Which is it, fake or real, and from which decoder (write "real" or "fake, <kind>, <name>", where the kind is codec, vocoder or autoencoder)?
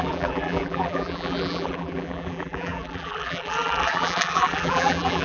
fake, vocoder, BigVGAN v2